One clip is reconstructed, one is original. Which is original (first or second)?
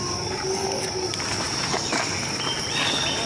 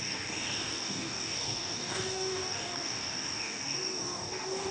first